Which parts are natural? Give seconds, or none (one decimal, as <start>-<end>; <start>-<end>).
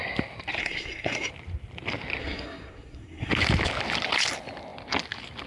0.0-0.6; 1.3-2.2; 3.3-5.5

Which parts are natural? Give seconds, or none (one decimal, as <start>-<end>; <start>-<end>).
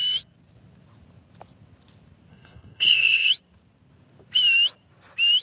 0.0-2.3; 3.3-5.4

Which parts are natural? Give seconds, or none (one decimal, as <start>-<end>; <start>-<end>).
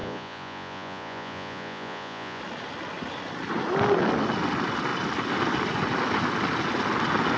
2.4-7.4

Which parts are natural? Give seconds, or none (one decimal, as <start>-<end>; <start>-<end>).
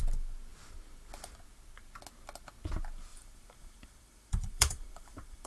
0.0-3.1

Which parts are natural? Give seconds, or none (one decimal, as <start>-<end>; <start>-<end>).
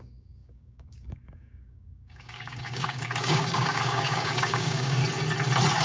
5.0-5.8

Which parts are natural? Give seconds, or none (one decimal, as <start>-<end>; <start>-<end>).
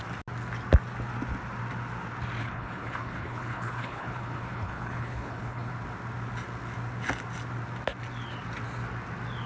0.0-2.4; 5.7-9.5